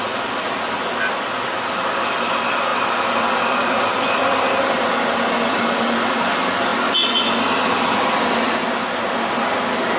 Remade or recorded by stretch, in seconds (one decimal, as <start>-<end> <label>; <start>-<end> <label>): 0.0-10.0 recorded